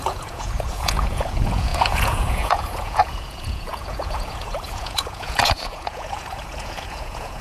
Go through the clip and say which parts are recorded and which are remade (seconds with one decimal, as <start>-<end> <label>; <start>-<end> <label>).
0.0-7.4 remade

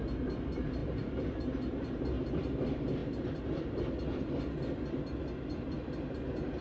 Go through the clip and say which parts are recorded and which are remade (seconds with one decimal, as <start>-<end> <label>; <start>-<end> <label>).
0.0-6.6 recorded